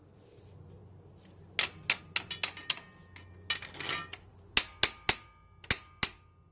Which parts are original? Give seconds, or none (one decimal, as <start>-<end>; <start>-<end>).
0.0-6.5